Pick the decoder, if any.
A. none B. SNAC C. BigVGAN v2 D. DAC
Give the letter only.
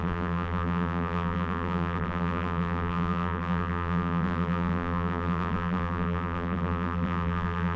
C